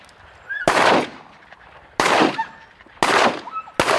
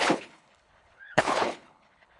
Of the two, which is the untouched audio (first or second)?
first